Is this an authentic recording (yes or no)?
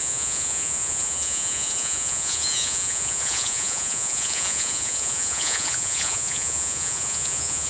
no